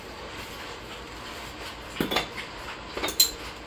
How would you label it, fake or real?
real